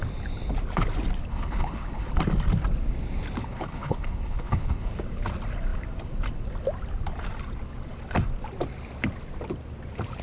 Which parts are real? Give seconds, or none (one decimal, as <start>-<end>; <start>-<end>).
0.0-1.3; 2.1-3.4; 4.9-10.2